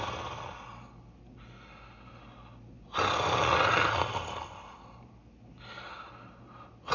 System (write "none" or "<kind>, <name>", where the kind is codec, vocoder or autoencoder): none